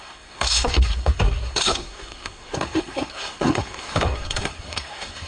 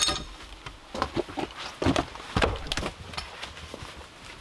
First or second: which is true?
second